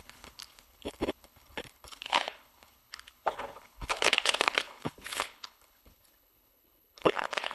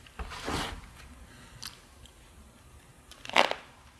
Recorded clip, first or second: second